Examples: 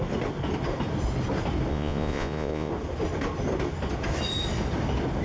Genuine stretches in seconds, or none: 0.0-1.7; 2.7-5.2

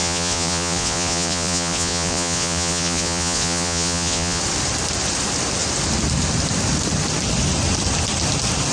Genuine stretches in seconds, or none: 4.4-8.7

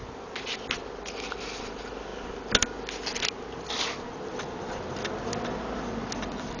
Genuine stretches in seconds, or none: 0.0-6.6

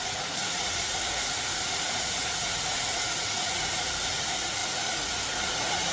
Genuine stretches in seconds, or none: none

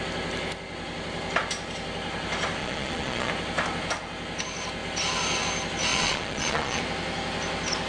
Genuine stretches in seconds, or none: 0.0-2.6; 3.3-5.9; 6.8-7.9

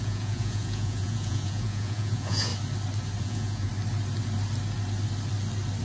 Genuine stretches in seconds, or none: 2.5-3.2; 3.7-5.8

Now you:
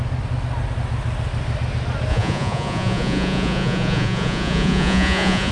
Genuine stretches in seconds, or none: 0.0-2.1

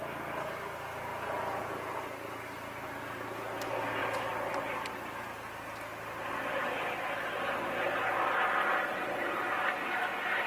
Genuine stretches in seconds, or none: 0.0-1.1; 2.0-10.5